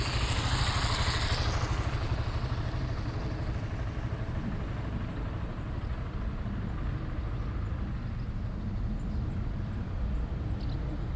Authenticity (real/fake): real